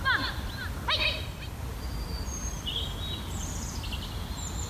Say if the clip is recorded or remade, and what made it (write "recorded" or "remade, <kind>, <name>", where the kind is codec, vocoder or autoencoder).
recorded